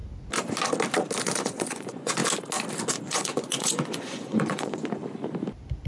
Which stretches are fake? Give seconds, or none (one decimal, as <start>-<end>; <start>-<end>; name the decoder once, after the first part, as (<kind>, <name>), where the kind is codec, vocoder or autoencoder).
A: 1.2-2.2 (vocoder, Vocos); 2.9-5.0